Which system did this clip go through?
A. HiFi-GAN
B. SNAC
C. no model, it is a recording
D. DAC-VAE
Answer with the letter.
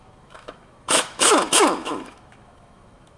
D